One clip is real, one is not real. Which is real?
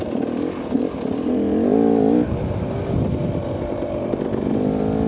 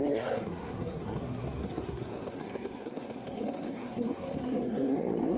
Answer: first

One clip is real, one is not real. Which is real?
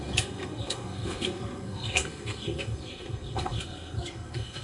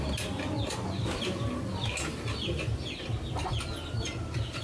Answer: second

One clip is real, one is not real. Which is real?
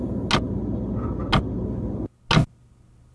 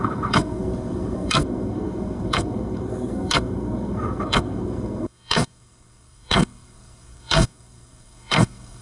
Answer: first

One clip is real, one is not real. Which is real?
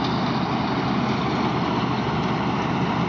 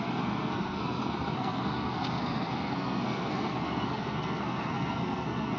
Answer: first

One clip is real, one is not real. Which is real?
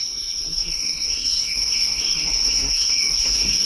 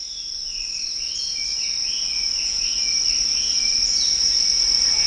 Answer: second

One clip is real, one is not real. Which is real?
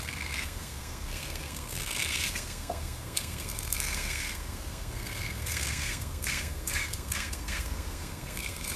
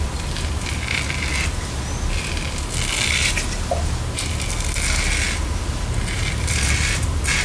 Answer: second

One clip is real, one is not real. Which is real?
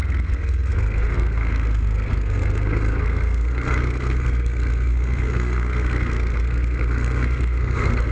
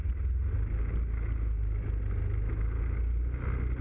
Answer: second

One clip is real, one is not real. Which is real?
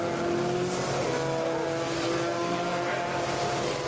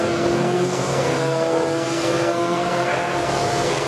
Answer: first